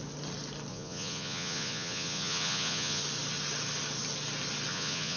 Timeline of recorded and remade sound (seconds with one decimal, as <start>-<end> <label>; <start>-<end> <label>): 0.0-0.7 recorded; 0.7-3.0 remade; 3.0-4.7 recorded; 4.7-5.2 remade